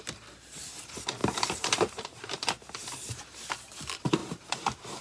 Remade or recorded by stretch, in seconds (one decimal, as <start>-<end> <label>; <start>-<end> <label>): 0.0-1.2 recorded; 1.2-3.5 remade; 3.5-4.2 recorded; 4.2-5.0 remade